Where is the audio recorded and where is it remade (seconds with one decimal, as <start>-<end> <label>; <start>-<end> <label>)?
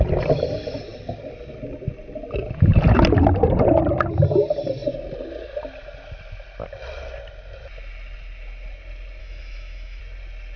0.0-9.2 recorded; 9.2-10.0 remade; 10.0-10.6 recorded